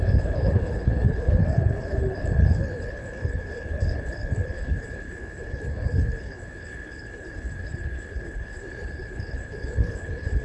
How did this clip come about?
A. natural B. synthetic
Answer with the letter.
B